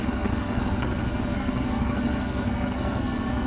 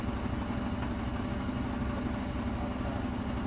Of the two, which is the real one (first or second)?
second